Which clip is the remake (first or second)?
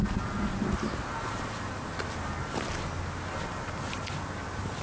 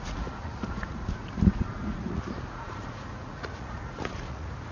second